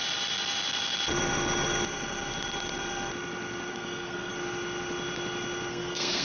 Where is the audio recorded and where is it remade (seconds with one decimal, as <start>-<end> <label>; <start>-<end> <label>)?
0.0-3.7 recorded; 3.7-4.3 remade; 4.3-5.7 recorded; 5.7-6.2 remade